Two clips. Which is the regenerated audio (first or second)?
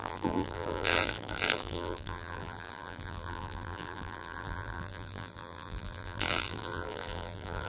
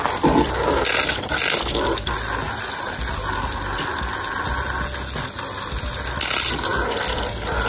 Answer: first